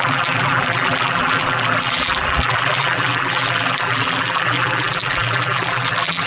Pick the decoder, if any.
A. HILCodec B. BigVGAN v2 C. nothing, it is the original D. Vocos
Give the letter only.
B